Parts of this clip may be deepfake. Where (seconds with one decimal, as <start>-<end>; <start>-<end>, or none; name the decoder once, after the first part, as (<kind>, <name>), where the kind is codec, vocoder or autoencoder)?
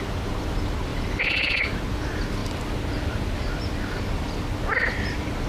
0.9-1.8 (vocoder, BigVGAN v2); 2.4-3.7